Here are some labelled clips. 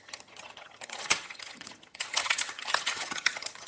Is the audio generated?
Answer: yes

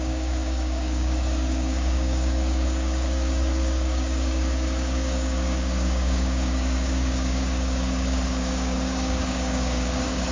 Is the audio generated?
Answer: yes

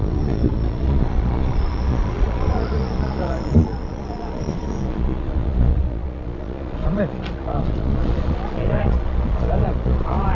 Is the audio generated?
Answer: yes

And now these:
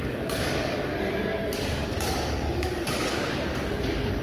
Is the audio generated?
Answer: yes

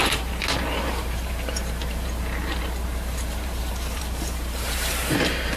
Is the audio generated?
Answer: yes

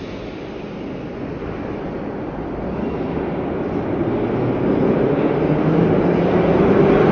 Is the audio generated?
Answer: no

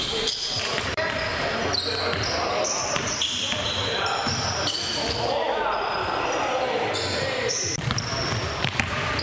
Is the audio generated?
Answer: yes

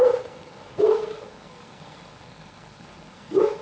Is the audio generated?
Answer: yes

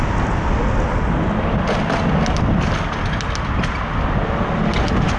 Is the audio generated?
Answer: no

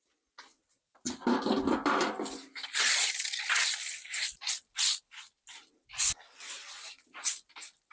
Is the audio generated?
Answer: no